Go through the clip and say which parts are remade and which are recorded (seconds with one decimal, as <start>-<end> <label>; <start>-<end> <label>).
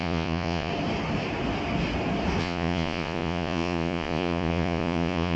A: 0.0-0.7 remade; 0.7-2.4 recorded; 2.4-5.4 remade